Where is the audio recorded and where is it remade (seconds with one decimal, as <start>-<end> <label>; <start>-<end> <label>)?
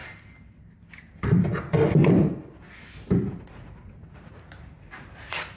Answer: 0.0-3.4 recorded; 3.4-5.6 remade